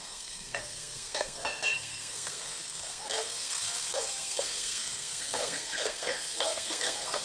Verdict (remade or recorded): remade